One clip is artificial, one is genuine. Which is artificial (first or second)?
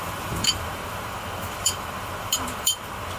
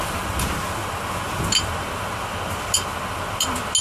first